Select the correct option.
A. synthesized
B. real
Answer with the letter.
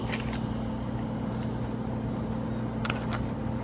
B